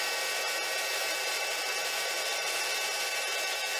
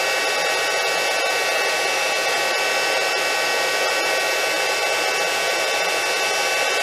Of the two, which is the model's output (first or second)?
first